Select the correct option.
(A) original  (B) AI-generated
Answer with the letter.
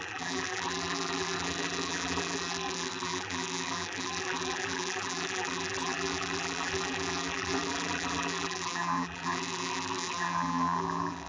B